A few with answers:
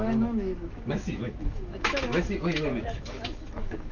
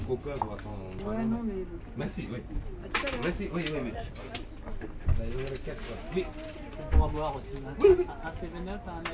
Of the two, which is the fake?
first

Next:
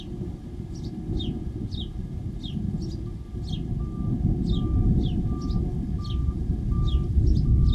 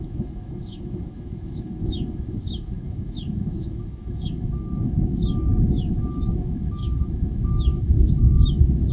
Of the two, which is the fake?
second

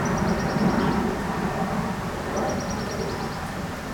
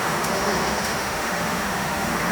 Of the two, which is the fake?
second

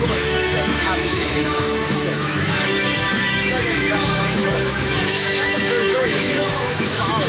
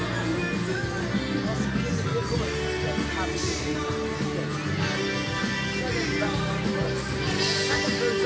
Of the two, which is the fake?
first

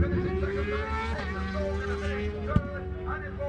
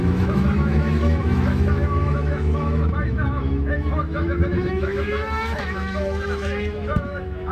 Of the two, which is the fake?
second